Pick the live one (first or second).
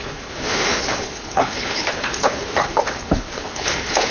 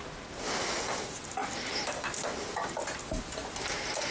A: second